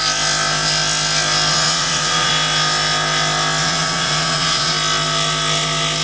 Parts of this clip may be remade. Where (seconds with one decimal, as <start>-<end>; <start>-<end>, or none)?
1.5-2.3; 3.6-4.7